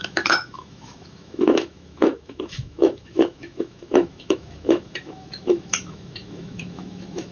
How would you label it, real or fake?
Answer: fake